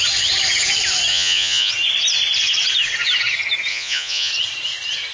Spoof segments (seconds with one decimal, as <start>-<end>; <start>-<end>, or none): 1.1-1.7; 3.7-4.3